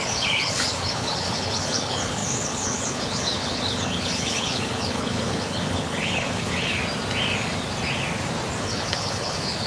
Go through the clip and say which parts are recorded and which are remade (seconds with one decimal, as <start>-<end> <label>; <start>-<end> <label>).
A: 0.0-6.8 remade; 6.8-8.6 recorded; 8.6-9.7 remade